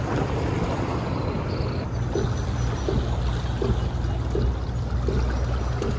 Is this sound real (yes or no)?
yes